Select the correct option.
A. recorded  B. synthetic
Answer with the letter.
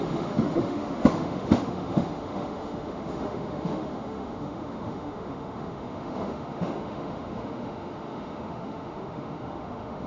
B